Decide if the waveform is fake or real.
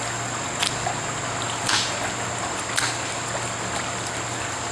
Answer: real